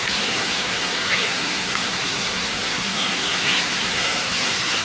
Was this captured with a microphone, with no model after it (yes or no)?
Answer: no